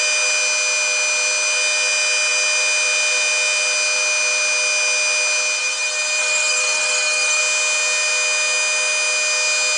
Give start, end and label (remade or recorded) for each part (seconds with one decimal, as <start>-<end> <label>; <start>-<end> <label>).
0.0-6.2 recorded; 6.2-7.4 remade; 7.4-9.8 recorded